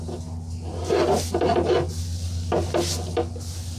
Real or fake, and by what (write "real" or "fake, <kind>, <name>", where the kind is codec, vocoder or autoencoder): real